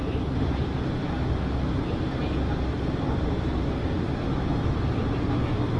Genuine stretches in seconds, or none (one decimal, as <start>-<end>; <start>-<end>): 0.0-5.8